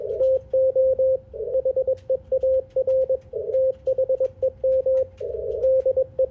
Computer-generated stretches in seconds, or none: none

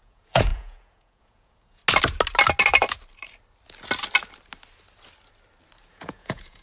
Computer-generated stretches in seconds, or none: 0.0-1.8; 5.8-6.6

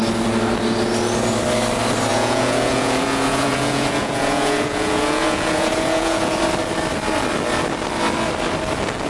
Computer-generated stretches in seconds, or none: 2.1-6.4

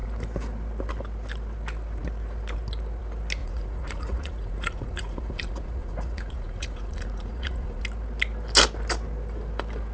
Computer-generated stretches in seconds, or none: 3.4-7.8